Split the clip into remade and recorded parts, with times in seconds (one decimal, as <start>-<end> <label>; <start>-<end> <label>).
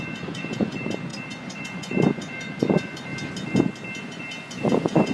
0.0-3.1 remade; 3.1-4.0 recorded; 4.0-5.1 remade